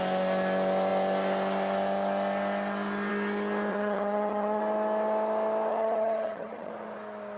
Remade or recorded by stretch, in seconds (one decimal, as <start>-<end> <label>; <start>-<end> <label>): 0.0-3.7 recorded; 3.7-4.6 remade; 4.6-5.7 recorded; 5.7-6.7 remade; 6.7-7.4 recorded